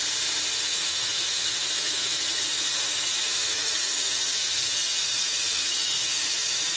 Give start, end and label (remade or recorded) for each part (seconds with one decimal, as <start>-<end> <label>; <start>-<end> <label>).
0.0-0.6 recorded; 0.6-6.8 remade